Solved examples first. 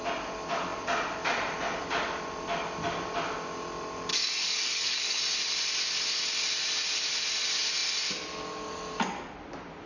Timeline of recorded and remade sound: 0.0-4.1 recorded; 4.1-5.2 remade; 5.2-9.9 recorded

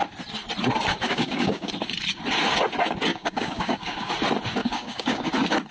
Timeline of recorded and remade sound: 0.0-0.9 recorded; 0.9-1.7 remade; 1.7-3.1 recorded; 3.1-4.1 remade; 4.1-4.6 recorded; 4.6-5.3 remade; 5.3-5.7 recorded

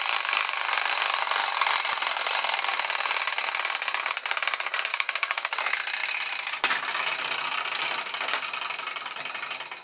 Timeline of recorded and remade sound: 0.0-4.9 recorded; 4.9-5.6 remade; 5.6-9.8 recorded

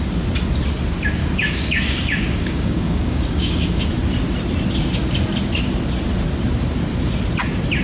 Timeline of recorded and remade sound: 0.0-1.2 recorded; 1.2-3.8 remade; 3.8-7.8 recorded

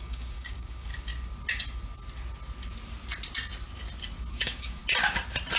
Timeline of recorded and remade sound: 0.0-0.9 remade; 0.9-4.3 recorded; 4.3-4.8 remade; 4.8-5.6 recorded

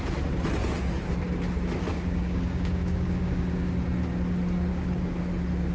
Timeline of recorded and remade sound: 0.0-1.9 recorded; 1.9-3.7 remade; 3.7-4.7 recorded; 4.7-5.2 remade; 5.2-5.7 recorded

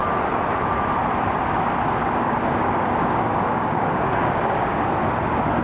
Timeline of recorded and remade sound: 0.0-2.0 recorded; 2.0-4.9 remade; 4.9-5.6 recorded